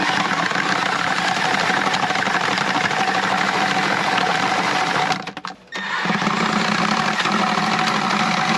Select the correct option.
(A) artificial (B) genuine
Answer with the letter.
A